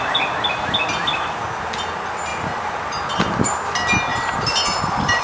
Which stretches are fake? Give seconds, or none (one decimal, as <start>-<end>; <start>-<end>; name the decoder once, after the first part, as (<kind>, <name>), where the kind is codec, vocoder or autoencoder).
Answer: 2.3-3.5 (vocoder, BigVGAN v2); 4.1-5.2